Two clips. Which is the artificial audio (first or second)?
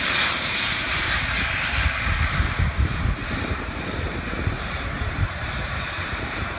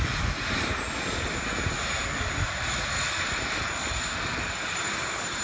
first